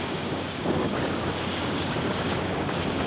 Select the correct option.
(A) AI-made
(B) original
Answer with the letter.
A